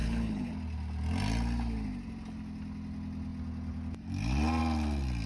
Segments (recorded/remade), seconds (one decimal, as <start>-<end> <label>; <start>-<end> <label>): 0.0-0.5 remade; 0.5-5.3 recorded